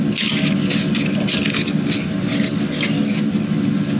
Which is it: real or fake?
real